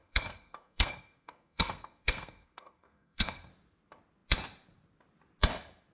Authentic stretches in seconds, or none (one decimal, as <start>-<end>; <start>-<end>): 3.5-5.9